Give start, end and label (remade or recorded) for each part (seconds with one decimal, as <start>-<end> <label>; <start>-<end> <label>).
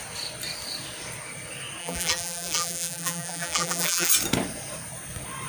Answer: 0.0-1.8 recorded; 1.8-4.1 remade; 4.1-5.5 recorded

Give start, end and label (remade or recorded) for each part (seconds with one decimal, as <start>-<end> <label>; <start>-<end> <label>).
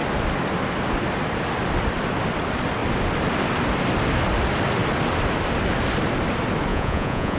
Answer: 0.0-6.7 recorded; 6.7-7.4 remade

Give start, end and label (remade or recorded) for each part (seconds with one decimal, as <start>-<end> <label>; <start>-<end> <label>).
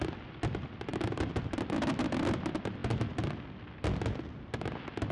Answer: 0.0-0.9 recorded; 0.9-1.5 remade; 1.5-5.1 recorded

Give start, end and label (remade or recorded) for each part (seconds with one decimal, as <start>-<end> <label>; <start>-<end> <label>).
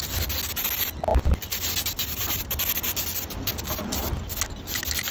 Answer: 0.0-1.1 recorded; 1.1-4.2 remade; 4.2-5.1 recorded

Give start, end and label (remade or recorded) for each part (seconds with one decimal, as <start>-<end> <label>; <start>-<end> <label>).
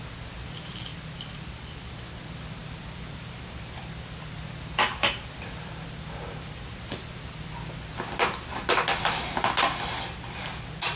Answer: 0.0-0.9 recorded; 0.9-2.0 remade; 2.0-2.6 recorded; 2.6-7.1 remade; 7.1-11.0 recorded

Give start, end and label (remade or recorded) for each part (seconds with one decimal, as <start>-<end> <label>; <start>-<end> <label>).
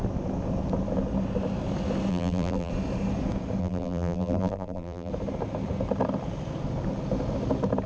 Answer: 0.0-2.1 recorded; 2.1-2.7 remade; 2.7-3.6 recorded; 3.6-5.1 remade; 5.1-7.9 recorded